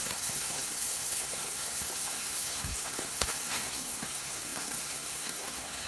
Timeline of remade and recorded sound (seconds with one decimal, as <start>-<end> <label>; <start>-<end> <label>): 0.0-5.9 remade

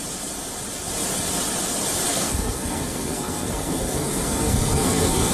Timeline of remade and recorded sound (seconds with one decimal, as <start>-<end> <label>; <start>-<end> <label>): 0.0-2.1 recorded; 2.1-5.3 remade

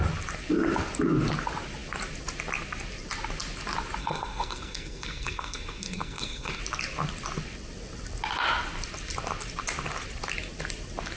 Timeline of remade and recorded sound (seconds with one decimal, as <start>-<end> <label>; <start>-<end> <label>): 0.0-4.0 recorded; 4.0-6.6 remade; 6.6-11.2 recorded

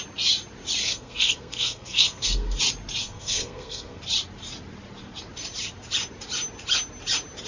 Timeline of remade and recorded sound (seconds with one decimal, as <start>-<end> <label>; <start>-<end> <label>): 0.0-0.8 recorded; 0.8-2.6 remade; 2.6-3.0 recorded; 3.0-4.0 remade; 4.0-7.5 recorded

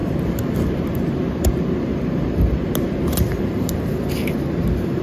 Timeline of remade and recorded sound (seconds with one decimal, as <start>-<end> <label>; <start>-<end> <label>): 0.0-5.0 recorded

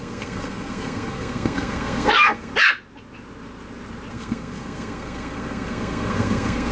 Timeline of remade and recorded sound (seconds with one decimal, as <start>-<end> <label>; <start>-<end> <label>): 0.0-2.5 remade; 2.5-4.1 recorded; 4.1-6.7 remade

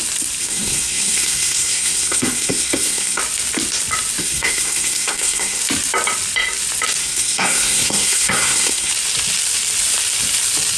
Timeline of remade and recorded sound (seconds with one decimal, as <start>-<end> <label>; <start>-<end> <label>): 0.0-0.4 recorded; 0.4-3.2 remade; 3.2-4.2 recorded; 4.2-5.6 remade; 5.6-7.0 recorded; 7.0-8.9 remade; 8.9-10.8 recorded

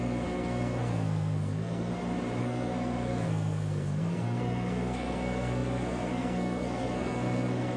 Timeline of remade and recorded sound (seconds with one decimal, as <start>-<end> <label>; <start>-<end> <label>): 0.0-1.9 remade; 1.9-2.4 recorded; 2.4-7.8 remade